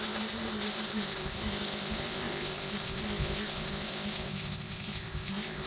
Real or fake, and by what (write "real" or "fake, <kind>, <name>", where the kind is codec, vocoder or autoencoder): fake, codec, ZipCodec